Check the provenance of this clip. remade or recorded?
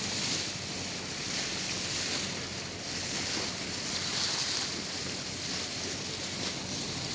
recorded